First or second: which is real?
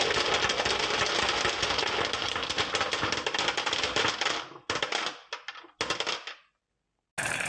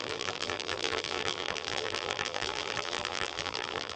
first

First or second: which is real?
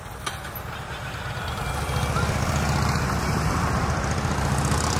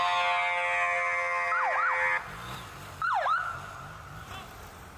second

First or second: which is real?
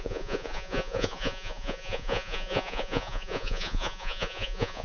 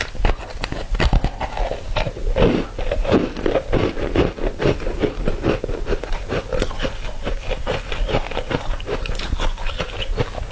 second